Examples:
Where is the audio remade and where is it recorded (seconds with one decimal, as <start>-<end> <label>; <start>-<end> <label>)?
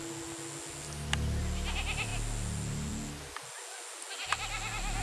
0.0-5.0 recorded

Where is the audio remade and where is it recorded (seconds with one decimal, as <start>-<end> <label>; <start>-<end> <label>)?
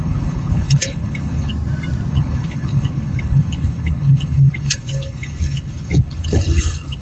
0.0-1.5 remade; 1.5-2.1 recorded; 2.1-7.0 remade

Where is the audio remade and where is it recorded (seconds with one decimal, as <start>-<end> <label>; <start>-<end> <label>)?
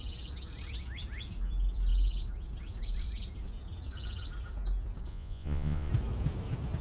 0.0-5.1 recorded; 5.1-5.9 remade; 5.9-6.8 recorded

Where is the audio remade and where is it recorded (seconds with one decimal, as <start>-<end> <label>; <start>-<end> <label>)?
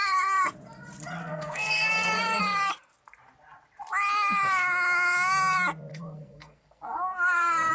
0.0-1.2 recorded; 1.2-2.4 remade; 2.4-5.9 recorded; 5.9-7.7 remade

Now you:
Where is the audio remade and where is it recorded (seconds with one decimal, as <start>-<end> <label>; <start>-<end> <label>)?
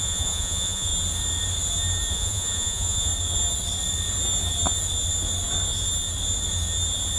0.0-0.9 remade; 0.9-2.1 recorded; 2.1-3.1 remade; 3.1-7.2 recorded